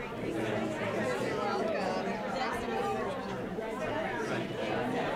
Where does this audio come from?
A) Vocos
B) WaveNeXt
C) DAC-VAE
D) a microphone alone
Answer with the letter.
D